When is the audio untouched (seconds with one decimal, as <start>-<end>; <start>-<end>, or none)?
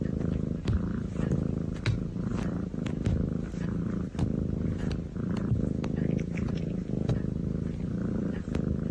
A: 0.0-8.9